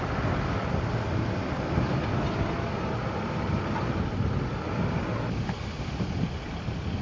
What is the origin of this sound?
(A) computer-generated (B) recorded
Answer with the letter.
B